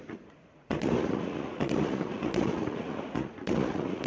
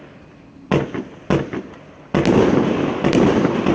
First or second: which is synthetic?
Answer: first